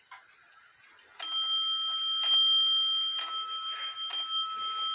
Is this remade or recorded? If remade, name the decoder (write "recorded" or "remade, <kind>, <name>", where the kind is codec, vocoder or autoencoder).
recorded